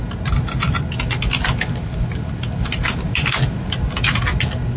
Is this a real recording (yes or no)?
yes